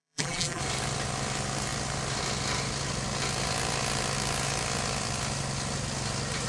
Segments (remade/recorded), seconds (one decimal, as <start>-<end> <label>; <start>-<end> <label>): 0.0-0.6 remade; 0.6-6.5 recorded